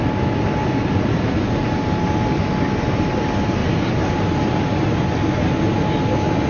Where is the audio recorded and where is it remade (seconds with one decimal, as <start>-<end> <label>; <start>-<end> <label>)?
0.0-6.5 recorded